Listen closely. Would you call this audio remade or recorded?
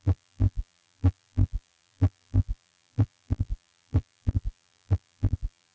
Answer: remade